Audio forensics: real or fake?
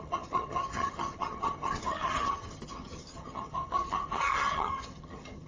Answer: fake